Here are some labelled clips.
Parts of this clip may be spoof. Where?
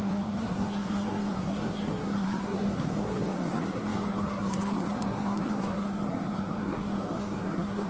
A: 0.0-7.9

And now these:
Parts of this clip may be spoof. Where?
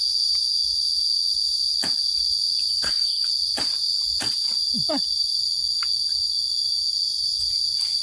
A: 2.7-3.3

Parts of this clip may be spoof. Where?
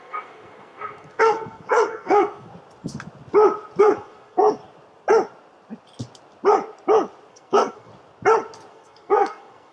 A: 0.0-2.5; 3.8-4.6; 7.3-7.9; 8.7-9.7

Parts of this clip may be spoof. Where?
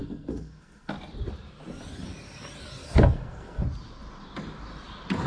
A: 0.0-0.9; 2.8-3.6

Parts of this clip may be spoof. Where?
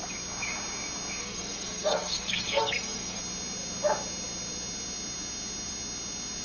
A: 1.2-3.2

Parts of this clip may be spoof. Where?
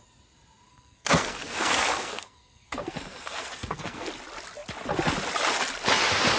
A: 0.7-4.1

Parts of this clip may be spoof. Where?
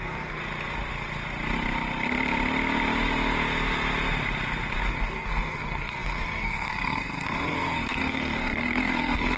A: 0.0-0.4; 4.9-9.4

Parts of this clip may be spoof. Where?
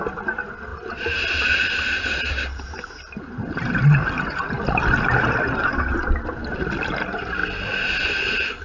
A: none